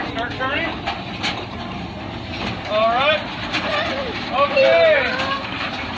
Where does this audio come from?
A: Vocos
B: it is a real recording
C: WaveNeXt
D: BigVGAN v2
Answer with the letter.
D